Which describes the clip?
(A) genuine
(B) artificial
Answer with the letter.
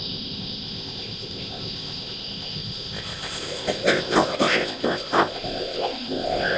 B